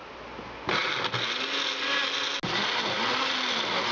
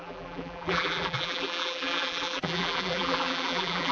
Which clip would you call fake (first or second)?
second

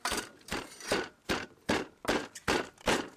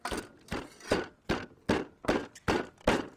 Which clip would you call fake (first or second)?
first